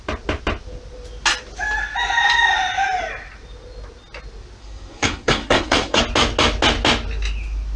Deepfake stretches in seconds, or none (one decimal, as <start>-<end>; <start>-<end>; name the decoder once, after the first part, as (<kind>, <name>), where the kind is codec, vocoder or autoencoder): 4.6-6.0 (codec, SNAC)